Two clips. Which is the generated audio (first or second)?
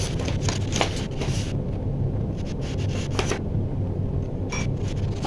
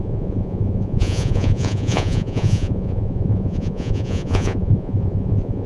second